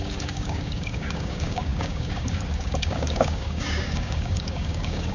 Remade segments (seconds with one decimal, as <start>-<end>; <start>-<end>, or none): 0.0-5.1